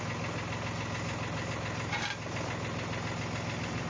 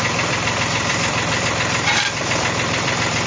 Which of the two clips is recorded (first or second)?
first